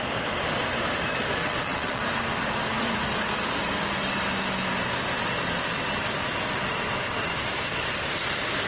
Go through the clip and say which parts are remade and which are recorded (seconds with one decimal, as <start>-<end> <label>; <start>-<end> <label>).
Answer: 0.0-1.4 recorded; 1.4-2.0 remade; 2.0-8.7 recorded